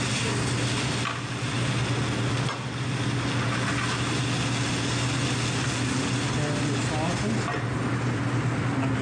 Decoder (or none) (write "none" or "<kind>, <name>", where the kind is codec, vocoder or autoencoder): none